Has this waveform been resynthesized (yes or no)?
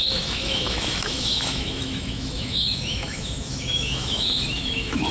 yes